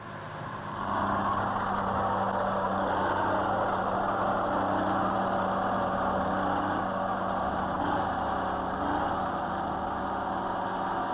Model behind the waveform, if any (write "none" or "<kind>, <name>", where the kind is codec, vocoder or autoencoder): none